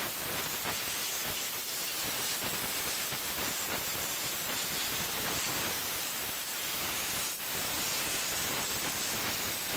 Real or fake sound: fake